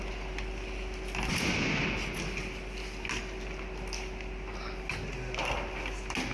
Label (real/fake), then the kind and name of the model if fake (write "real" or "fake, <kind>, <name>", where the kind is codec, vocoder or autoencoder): real